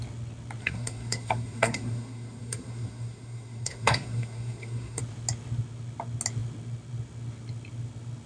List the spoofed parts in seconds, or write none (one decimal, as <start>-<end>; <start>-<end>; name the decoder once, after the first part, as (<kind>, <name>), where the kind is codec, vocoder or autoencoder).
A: 0.6-5.0 (codec, SNAC)